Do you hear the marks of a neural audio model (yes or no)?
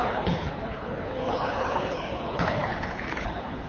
yes